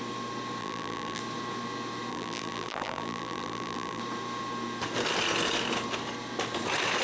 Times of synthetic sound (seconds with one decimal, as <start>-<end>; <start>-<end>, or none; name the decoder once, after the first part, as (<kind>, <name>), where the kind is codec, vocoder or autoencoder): 0.6-1.2 (vocoder, BigVGAN v2); 2.1-4.0